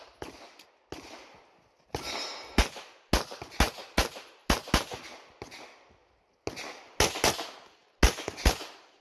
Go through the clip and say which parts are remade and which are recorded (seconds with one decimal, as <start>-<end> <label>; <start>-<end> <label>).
0.0-9.0 recorded